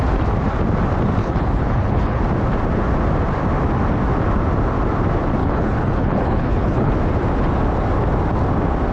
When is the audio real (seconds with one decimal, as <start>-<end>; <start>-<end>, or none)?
0.0-1.2; 2.2-5.4; 6.9-8.9